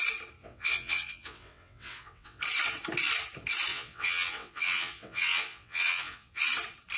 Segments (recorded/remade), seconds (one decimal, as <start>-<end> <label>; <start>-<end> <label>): 0.0-0.4 recorded; 0.4-2.4 remade; 2.4-3.7 recorded; 3.7-6.4 remade; 6.4-7.0 recorded